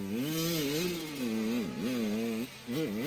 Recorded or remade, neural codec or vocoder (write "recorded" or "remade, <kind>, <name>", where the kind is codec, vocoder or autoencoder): recorded